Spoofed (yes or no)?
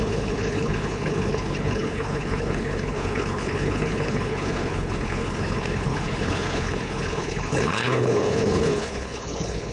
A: yes